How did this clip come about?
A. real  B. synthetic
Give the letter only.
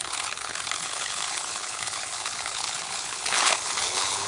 B